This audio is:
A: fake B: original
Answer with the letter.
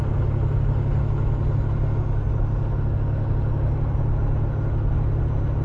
B